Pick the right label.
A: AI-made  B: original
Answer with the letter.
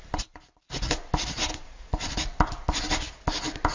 B